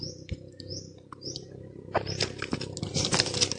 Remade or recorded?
recorded